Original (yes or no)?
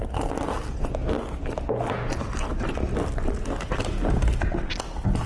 yes